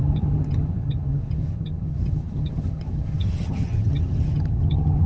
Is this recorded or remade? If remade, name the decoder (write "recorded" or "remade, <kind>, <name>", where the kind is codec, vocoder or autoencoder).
remade, vocoder, HiFi-GAN